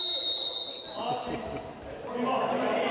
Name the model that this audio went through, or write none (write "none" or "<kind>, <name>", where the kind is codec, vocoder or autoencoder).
none